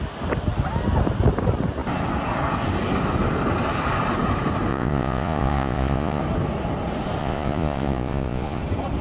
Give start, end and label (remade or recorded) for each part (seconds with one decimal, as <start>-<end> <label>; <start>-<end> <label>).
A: 0.0-4.7 recorded; 4.7-6.2 remade; 6.2-7.2 recorded; 7.2-8.6 remade; 8.6-9.0 recorded